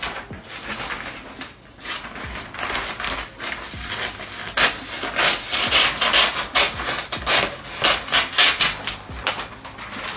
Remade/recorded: recorded